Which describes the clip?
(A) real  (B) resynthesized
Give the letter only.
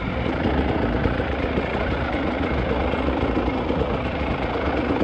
B